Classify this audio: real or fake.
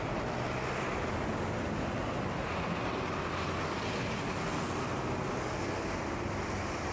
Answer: real